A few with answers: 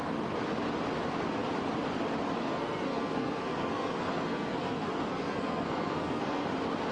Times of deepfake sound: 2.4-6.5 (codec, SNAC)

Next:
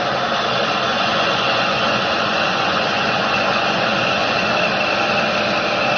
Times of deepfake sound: 0.9-4.5 (vocoder, Vocos)

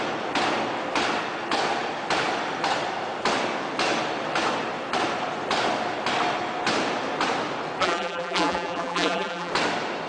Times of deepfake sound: 7.8-9.5 (vocoder, BigVGAN v2)

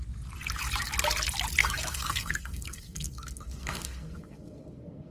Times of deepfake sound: 1.6-5.1 (codec, SNAC)